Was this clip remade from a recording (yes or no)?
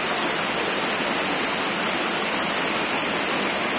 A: no